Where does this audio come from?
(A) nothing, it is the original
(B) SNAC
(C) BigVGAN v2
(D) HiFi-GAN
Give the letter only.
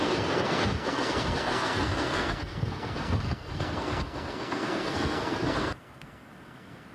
B